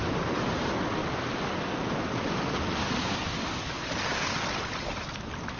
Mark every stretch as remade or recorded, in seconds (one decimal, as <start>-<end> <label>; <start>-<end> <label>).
0.0-5.6 recorded